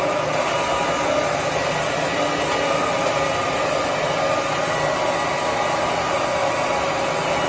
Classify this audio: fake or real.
real